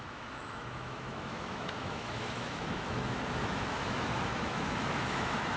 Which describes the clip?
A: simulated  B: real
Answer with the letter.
A